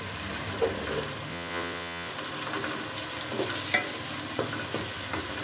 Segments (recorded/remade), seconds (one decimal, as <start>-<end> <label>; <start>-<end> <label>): 0.0-1.3 recorded; 1.3-2.1 remade; 2.1-5.4 recorded